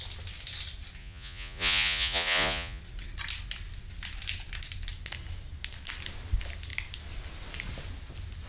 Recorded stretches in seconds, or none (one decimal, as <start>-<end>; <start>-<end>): 0.0-1.0; 2.8-8.5